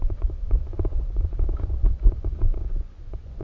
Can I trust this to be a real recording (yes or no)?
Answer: no